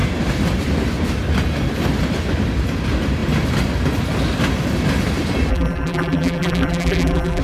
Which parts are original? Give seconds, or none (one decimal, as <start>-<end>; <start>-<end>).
0.0-5.5